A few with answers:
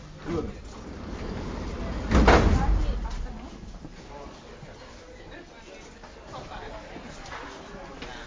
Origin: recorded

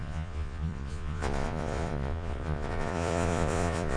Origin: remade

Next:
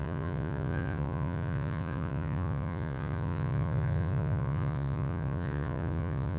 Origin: remade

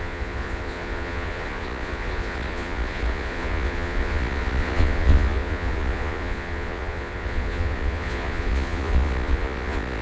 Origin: remade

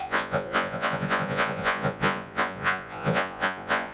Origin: remade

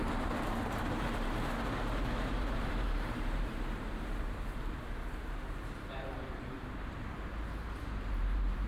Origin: remade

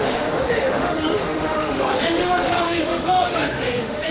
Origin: remade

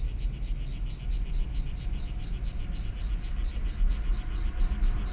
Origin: recorded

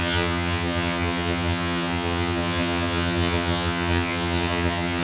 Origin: remade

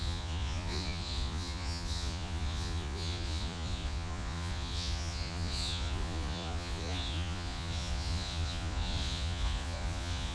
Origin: remade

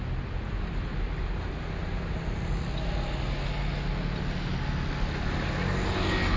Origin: recorded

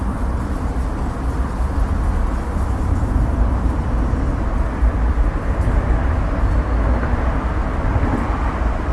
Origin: recorded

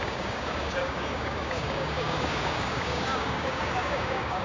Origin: remade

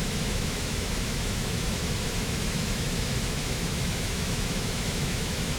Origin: remade